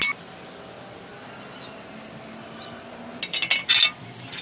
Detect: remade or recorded recorded